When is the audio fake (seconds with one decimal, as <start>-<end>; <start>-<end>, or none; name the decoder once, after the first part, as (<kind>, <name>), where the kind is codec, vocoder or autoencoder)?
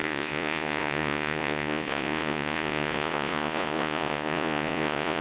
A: 0.0-5.2 (vocoder, Vocos)